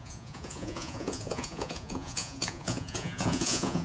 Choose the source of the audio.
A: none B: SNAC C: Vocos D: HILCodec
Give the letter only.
C